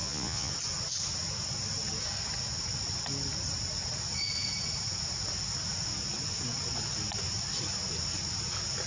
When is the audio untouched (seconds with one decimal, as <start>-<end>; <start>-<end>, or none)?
0.5-8.9